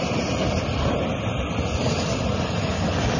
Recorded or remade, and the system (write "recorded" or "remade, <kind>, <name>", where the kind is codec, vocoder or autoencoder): recorded